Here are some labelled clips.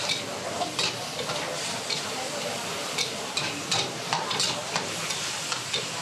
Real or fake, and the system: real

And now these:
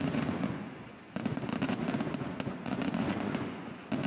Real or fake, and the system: fake, vocoder, Vocos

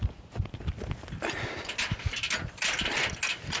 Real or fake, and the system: real